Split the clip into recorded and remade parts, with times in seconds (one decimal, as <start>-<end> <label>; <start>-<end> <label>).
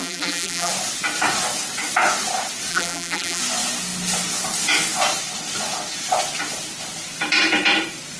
0.0-0.7 remade; 0.7-2.7 recorded; 2.7-3.4 remade; 3.4-8.2 recorded